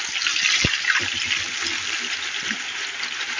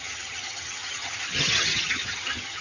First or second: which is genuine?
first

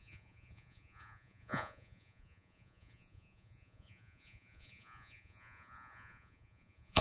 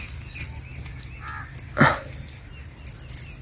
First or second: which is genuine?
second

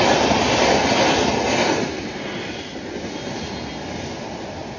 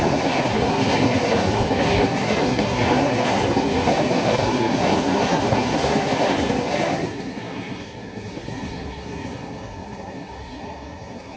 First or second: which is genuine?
first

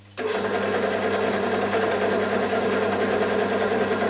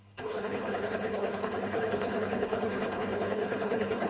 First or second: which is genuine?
first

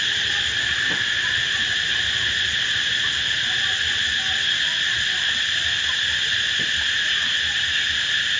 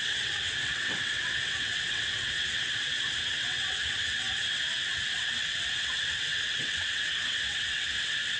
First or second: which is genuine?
first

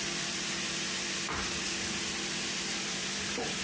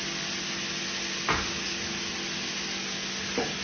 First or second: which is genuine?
second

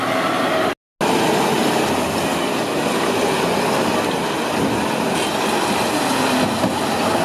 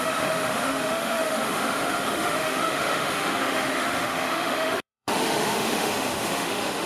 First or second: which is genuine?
first